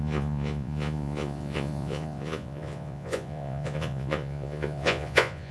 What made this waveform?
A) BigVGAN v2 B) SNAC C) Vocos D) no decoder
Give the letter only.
C